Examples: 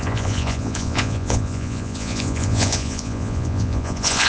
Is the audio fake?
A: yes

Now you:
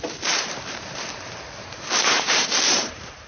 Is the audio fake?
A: yes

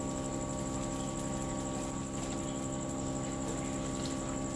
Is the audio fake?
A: no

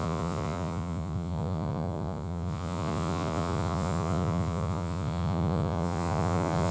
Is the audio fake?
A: yes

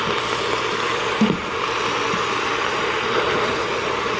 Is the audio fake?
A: no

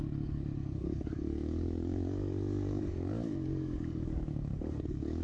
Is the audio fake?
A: yes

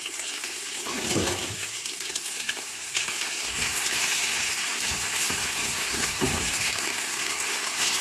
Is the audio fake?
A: yes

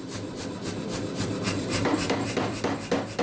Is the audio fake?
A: yes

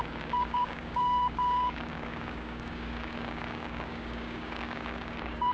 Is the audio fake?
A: yes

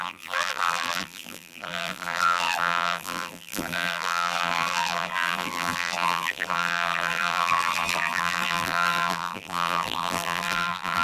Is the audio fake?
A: yes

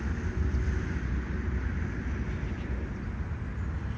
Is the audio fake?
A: no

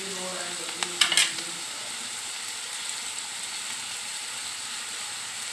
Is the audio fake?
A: no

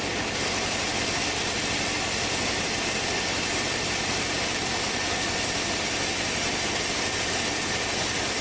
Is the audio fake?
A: no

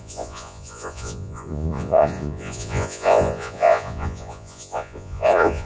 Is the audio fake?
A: yes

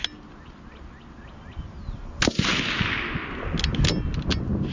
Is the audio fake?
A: no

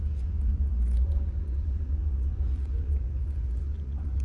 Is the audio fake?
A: yes